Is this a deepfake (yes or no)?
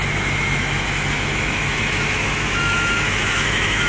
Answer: yes